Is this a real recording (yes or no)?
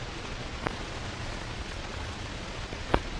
no